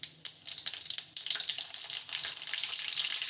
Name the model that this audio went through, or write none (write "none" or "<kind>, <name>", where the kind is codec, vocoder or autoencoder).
none